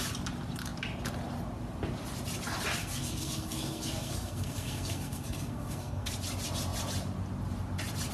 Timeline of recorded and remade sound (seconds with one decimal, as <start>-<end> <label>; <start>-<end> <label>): 0.0-2.8 recorded; 2.8-6.1 remade; 6.1-8.1 recorded